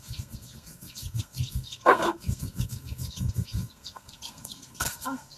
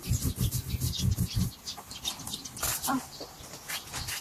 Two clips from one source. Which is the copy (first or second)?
first